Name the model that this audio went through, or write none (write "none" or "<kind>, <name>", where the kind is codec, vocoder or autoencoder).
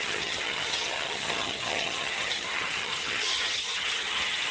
vocoder, HiFi-GAN